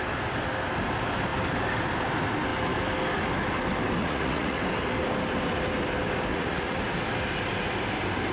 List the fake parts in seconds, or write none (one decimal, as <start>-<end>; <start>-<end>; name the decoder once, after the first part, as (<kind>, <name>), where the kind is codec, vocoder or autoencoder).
4.0-4.6 (vocoder, Vocos); 6.3-6.8